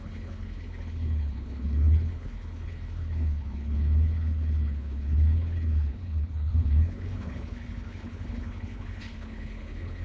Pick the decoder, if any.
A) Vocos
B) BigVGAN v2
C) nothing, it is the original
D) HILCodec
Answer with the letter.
D